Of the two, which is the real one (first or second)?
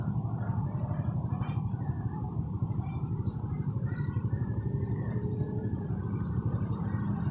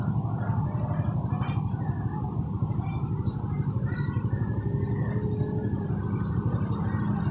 second